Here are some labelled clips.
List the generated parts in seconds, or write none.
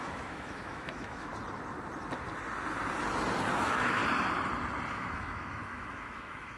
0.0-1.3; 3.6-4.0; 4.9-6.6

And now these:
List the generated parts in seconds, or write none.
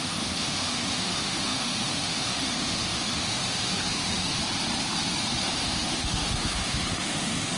0.0-4.4; 5.5-7.6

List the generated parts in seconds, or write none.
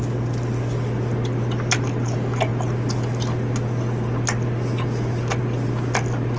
none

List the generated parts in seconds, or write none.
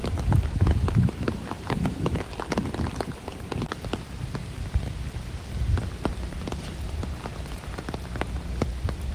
0.0-2.3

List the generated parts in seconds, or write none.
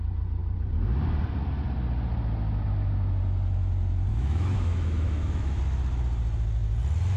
4.1-5.6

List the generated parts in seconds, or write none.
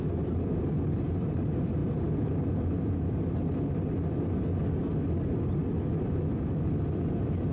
none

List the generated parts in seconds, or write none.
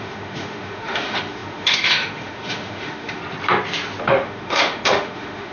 0.0-3.2; 4.0-5.5